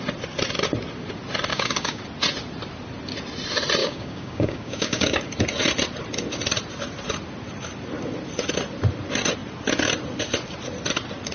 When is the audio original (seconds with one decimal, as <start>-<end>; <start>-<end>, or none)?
0.0-1.5; 2.0-3.8; 5.2-11.3